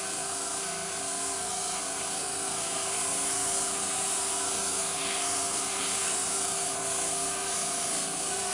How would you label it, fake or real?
fake